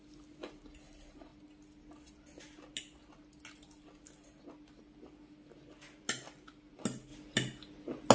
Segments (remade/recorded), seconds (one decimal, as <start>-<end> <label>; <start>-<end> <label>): 0.0-8.1 recorded